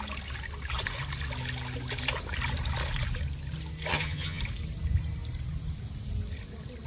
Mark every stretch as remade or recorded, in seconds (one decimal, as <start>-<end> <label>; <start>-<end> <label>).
0.0-3.9 recorded; 3.9-4.4 remade; 4.4-6.9 recorded